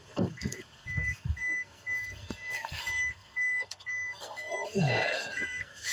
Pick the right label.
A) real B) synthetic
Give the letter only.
B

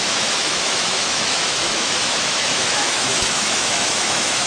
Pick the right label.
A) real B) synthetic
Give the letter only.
B